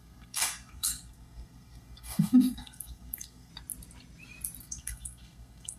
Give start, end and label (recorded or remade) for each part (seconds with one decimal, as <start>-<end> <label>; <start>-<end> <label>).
0.0-3.5 remade; 3.5-4.6 recorded; 4.6-5.8 remade